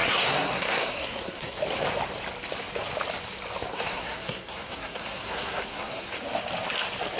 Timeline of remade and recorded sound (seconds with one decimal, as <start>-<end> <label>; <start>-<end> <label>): 0.0-1.6 remade; 1.6-3.7 recorded; 3.7-6.1 remade; 6.1-7.2 recorded